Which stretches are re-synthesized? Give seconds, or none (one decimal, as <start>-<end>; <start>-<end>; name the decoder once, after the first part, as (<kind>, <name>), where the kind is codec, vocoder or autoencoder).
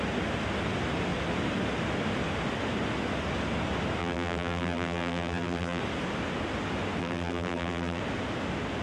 4.0-5.8 (vocoder, BigVGAN v2); 7.0-8.0